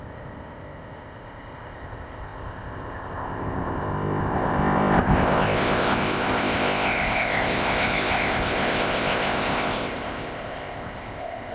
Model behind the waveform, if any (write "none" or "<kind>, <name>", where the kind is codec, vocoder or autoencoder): codec, ZipCodec